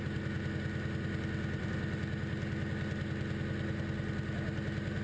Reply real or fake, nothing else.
real